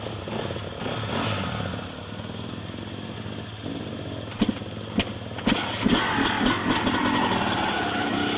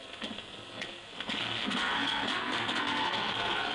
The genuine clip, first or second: first